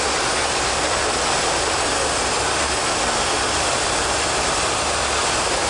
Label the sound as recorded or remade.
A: recorded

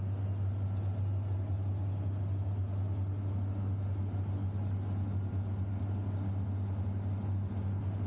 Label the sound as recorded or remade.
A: recorded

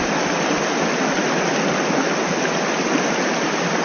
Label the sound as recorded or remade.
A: recorded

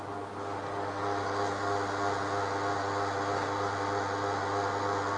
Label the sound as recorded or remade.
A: recorded